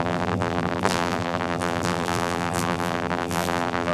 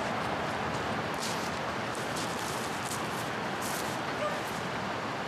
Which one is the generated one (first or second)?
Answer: first